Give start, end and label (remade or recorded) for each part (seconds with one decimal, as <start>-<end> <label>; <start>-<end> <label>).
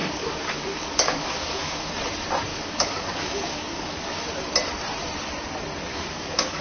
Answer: 0.0-1.9 remade; 1.9-2.5 recorded; 2.5-4.2 remade; 4.2-5.9 recorded; 5.9-6.6 remade